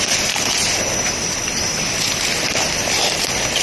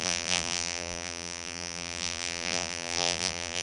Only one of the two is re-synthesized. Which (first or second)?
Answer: second